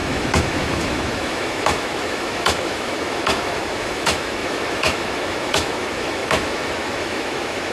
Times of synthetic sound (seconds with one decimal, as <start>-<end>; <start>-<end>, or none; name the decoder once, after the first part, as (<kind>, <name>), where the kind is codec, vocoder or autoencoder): 0.0-7.7 (autoencoder, DAC-VAE)